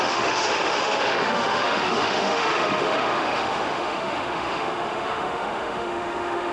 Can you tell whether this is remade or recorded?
remade